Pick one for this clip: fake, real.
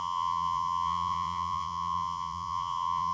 fake